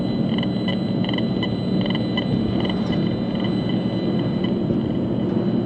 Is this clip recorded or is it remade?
recorded